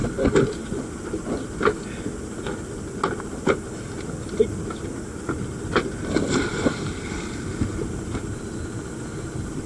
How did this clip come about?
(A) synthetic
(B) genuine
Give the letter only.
B